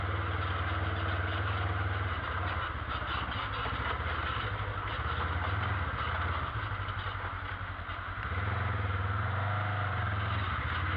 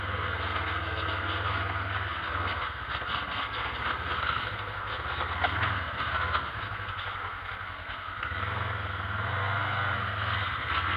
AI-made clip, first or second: second